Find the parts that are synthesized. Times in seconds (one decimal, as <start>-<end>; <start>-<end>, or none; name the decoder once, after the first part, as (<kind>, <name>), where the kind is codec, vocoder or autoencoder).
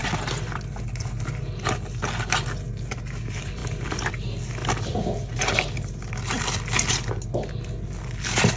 none